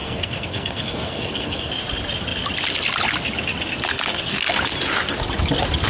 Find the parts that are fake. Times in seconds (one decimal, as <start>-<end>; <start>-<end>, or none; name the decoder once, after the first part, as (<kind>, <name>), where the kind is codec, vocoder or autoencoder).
0.0-1.7 (codec, SNAC)